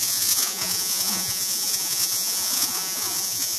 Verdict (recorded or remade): remade